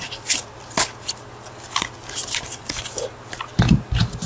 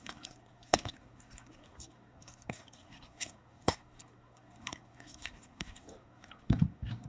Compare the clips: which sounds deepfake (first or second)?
second